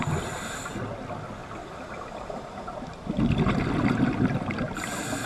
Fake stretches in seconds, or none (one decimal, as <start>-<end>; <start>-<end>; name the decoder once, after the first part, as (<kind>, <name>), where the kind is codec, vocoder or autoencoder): none